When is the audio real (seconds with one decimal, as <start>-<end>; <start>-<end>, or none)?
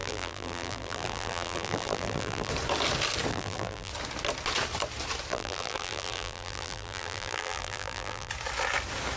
2.5-3.3; 3.9-5.3; 8.3-9.2